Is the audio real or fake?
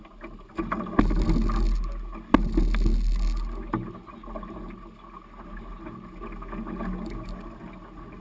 real